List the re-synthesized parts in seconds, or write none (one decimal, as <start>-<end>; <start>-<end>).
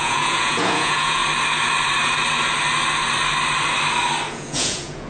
0.0-1.2; 4.3-5.1